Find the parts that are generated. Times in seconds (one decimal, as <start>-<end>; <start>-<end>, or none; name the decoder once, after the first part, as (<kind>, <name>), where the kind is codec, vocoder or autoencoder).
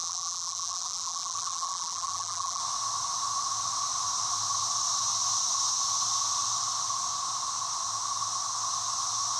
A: 0.0-2.6 (vocoder, BigVGAN v2)